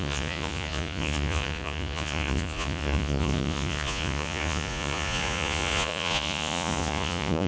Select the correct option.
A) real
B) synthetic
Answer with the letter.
B